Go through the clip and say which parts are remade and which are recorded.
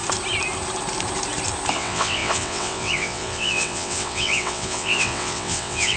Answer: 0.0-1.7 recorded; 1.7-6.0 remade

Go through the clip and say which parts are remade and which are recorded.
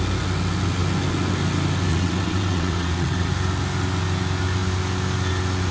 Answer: 0.0-1.9 recorded; 1.9-3.3 remade; 3.3-5.7 recorded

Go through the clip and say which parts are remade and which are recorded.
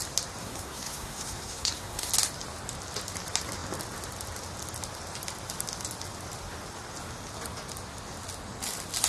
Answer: 0.0-0.4 recorded; 0.4-2.1 remade; 2.1-9.1 recorded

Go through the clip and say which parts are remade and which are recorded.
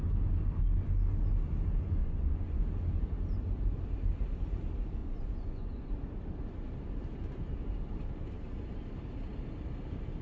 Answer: 0.0-2.0 recorded; 2.0-2.6 remade; 2.6-5.0 recorded; 5.0-5.9 remade; 5.9-10.2 recorded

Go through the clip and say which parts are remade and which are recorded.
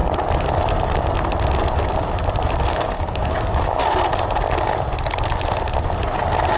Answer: 0.0-2.7 recorded; 2.7-3.8 remade; 3.8-6.6 recorded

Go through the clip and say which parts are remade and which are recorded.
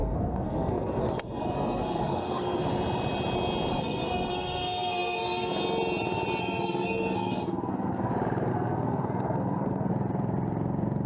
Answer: 0.0-2.6 remade; 2.6-3.7 recorded; 3.7-5.5 remade; 5.5-6.4 recorded; 6.4-8.1 remade; 8.1-8.5 recorded; 8.5-9.9 remade; 9.9-11.1 recorded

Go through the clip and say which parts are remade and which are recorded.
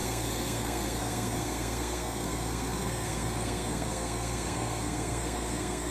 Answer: 0.0-5.9 remade